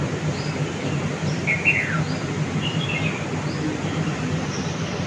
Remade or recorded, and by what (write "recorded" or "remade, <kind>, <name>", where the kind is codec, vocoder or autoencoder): recorded